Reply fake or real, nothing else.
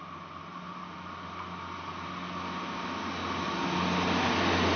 real